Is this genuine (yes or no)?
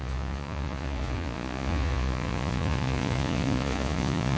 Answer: no